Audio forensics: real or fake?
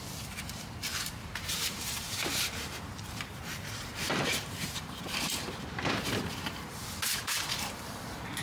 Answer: fake